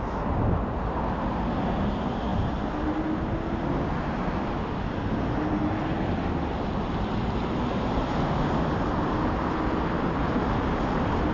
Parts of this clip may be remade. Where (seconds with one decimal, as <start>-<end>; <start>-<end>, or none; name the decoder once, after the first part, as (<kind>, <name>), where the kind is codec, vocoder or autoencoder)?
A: none